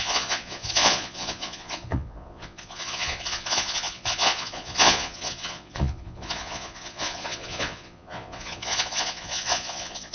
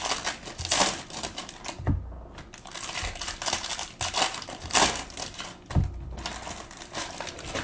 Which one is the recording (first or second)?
second